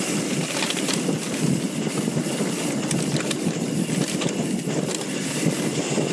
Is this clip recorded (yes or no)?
yes